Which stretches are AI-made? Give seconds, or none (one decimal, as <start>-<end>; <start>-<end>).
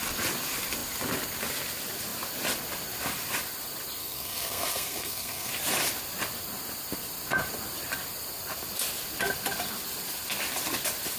4.0-5.5